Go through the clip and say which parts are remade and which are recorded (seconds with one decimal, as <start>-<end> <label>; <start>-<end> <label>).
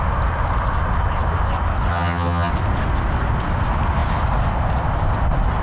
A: 0.0-1.9 recorded; 1.9-2.5 remade; 2.5-5.6 recorded